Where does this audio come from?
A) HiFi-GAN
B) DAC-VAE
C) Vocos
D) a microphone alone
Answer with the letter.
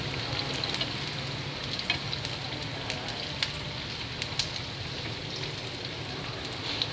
D